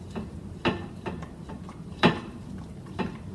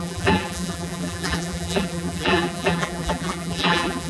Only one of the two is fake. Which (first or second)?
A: second